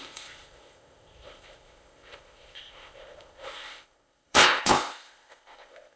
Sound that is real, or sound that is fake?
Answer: fake